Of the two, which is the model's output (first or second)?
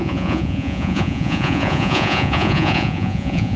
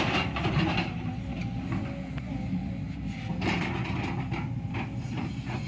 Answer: first